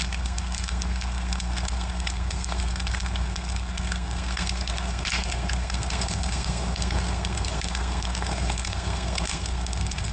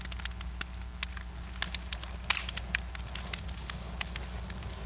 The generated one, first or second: first